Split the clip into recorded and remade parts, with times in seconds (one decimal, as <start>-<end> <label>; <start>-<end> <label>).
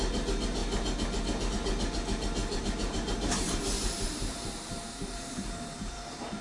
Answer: 0.0-2.4 recorded; 2.4-6.4 remade